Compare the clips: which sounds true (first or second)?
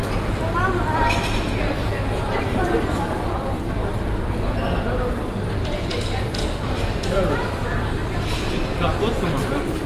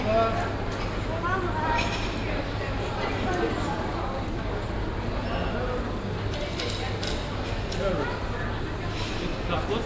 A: second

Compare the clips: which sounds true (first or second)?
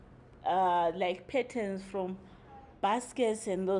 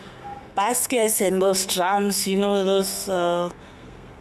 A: first